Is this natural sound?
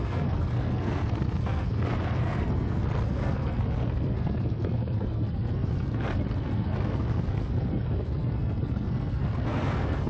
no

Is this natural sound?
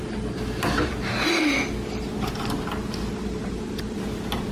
yes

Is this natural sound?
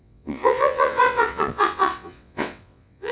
no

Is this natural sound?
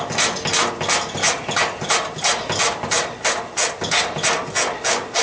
yes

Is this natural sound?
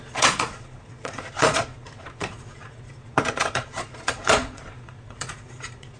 no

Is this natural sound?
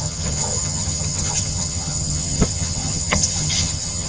no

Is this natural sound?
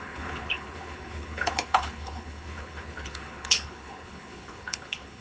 no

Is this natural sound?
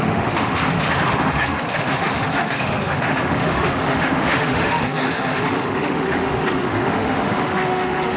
no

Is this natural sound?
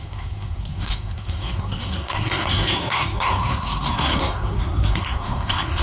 no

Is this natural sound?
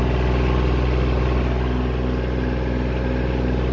yes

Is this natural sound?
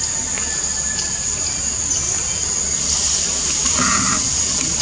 yes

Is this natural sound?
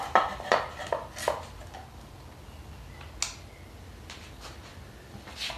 yes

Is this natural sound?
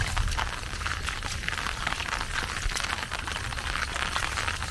yes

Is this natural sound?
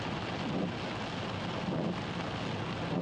yes